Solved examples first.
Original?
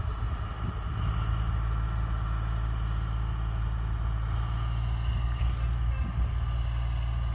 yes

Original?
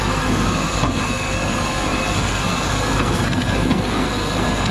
no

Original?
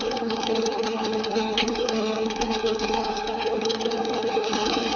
no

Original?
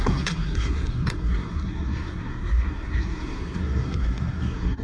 no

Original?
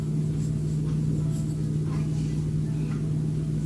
yes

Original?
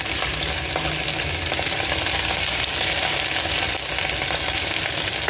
yes